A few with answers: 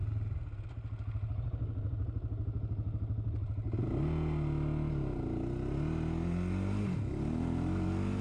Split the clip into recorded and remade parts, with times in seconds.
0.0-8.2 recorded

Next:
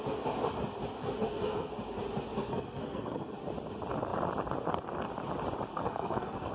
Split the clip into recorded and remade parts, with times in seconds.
0.0-1.0 recorded; 1.0-1.7 remade; 1.7-2.3 recorded; 2.3-3.4 remade; 3.4-5.7 recorded; 5.7-6.5 remade

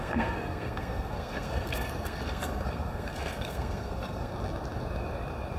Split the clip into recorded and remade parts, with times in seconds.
0.0-4.3 remade; 4.3-5.6 recorded

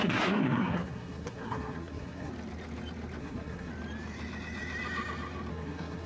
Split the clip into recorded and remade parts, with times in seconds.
0.0-2.3 remade; 2.3-3.2 recorded; 3.2-3.7 remade; 3.7-5.5 recorded; 5.5-6.1 remade

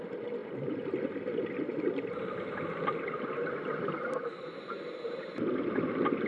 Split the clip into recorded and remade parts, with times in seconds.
0.0-6.3 recorded

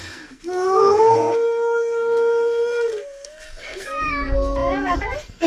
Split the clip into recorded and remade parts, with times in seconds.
0.0-5.5 remade

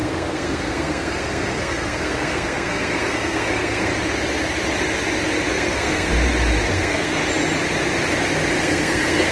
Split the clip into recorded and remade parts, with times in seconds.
0.0-3.9 remade; 3.9-5.5 recorded; 5.5-6.1 remade; 6.1-6.7 recorded; 6.7-7.2 remade; 7.2-8.6 recorded; 8.6-9.3 remade

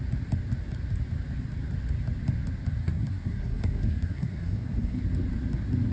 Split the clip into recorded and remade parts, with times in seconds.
0.0-2.8 recorded; 2.8-5.0 remade; 5.0-5.9 recorded